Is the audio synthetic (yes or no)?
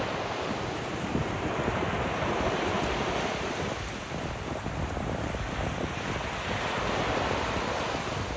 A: no